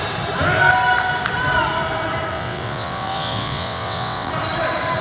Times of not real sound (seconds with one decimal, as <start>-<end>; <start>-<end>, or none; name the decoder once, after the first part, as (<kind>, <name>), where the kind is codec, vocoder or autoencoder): 2.3-4.3 (vocoder, WaveNeXt)